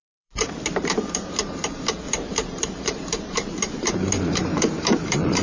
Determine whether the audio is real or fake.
fake